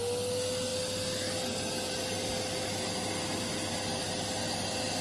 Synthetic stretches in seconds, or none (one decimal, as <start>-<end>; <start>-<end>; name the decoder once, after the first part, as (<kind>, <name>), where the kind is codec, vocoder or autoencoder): none